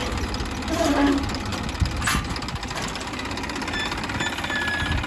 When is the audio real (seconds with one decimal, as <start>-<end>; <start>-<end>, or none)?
0.0-5.1